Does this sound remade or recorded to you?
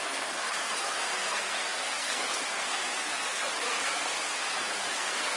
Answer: remade